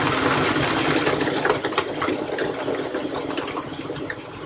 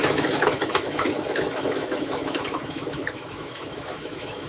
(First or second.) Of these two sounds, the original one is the first